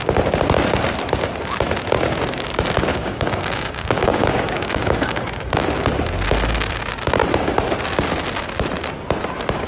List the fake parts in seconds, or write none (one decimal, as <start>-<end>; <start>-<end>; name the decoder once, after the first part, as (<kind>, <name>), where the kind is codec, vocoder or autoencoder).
2.9-5.6 (codec, DAC)